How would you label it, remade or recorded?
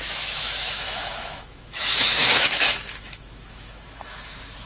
remade